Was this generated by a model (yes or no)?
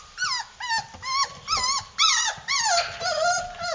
no